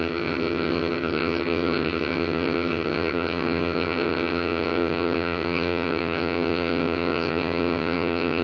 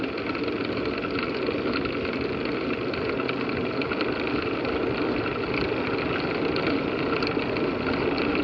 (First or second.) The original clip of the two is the second